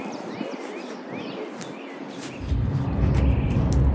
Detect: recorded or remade recorded